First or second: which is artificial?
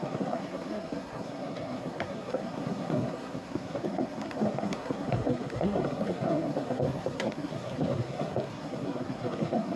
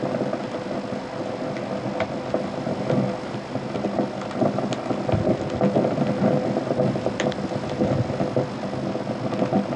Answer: first